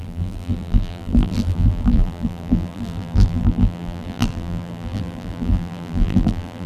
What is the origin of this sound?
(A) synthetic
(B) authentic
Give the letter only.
A